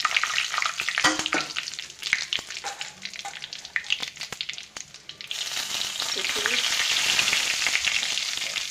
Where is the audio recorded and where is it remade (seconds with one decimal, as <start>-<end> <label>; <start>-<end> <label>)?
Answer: 0.0-4.0 remade; 4.0-8.7 recorded